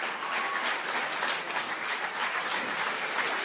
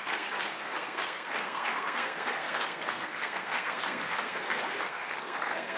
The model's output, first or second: second